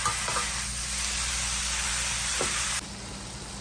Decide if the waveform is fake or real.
real